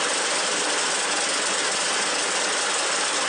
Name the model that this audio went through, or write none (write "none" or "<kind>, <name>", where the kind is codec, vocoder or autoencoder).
none